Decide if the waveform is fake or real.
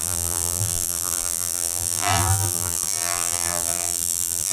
fake